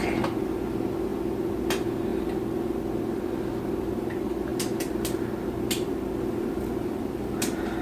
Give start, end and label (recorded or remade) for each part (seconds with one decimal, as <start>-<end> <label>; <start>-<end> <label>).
0.0-7.8 recorded